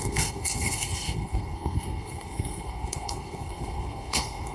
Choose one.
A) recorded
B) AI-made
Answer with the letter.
B